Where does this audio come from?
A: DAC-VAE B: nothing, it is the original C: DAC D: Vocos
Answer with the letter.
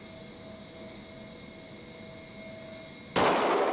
B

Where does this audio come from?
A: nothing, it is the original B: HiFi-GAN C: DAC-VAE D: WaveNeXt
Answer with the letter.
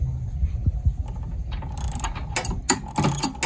A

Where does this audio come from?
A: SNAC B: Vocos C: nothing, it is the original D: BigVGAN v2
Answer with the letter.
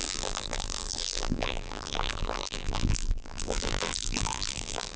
D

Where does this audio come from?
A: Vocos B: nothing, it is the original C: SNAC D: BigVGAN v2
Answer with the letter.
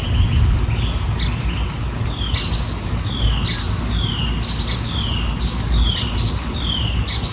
B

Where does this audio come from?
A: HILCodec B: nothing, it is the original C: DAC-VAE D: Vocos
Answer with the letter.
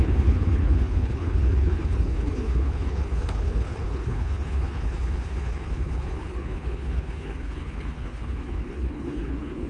A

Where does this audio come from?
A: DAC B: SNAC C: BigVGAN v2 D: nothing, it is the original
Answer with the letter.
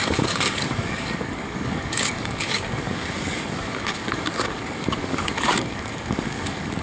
A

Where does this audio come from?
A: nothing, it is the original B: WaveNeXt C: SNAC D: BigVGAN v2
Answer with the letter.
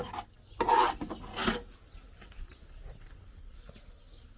A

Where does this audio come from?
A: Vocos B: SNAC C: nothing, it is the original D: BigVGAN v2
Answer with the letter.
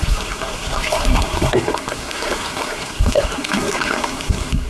B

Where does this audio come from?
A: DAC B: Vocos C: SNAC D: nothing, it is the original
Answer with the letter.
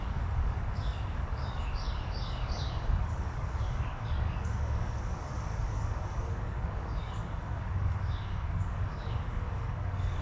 A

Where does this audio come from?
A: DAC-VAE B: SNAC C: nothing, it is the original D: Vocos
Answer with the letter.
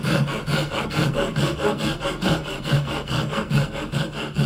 B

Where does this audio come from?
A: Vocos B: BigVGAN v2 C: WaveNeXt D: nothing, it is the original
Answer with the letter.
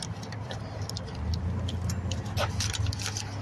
D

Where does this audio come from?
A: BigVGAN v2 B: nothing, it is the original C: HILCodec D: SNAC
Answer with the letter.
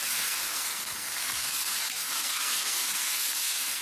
D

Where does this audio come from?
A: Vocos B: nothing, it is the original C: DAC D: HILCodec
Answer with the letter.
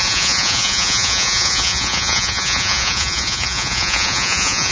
A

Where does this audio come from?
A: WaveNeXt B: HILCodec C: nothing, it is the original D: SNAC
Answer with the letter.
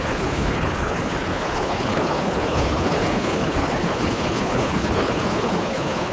B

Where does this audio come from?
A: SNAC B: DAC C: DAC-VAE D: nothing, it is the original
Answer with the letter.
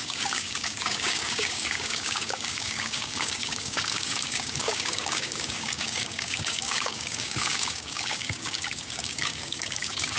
B